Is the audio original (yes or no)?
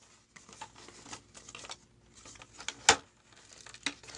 yes